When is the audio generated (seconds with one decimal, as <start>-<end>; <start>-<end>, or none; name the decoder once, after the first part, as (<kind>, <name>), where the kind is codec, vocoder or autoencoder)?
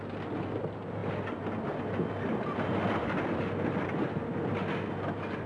none